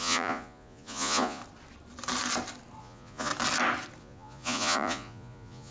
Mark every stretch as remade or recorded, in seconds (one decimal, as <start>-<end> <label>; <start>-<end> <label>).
0.0-1.4 remade; 1.4-2.8 recorded; 2.8-3.3 remade; 3.3-4.0 recorded; 4.0-5.7 remade